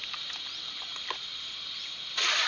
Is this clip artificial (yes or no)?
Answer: no